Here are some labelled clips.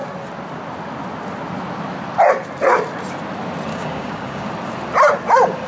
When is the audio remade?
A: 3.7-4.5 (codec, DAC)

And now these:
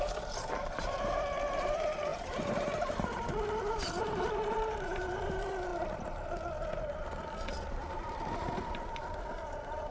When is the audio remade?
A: 0.0-5.7 (vocoder, BigVGAN v2); 7.7-9.9

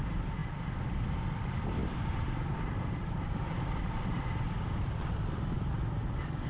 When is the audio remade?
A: 0.4-1.0 (vocoder, BigVGAN v2); 1.8-5.7

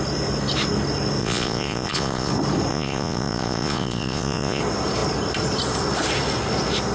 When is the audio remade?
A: 1.2-2.3 (vocoder, Vocos); 2.7-4.6

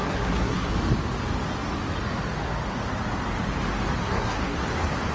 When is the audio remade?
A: 0.0-0.7 (codec, SNAC); 4.0-4.6

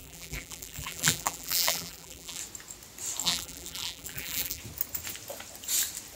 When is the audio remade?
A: 0.0-2.4 (vocoder, BigVGAN v2); 3.2-4.6

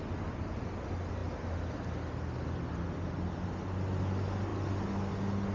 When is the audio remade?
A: none

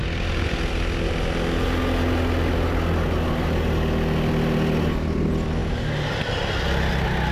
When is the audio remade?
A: none